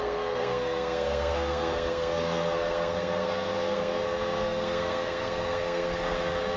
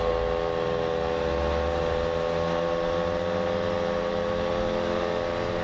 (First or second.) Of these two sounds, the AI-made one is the first